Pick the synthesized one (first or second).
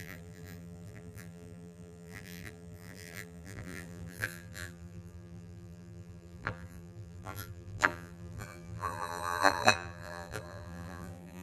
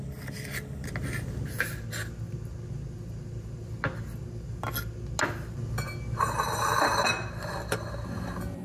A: first